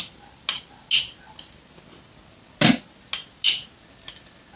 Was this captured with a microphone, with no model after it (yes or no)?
yes